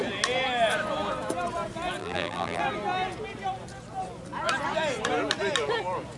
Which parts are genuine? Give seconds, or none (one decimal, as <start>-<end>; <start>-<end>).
0.0-2.0; 2.6-6.2